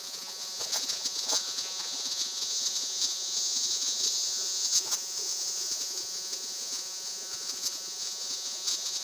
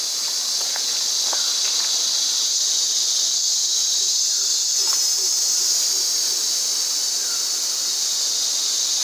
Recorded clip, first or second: second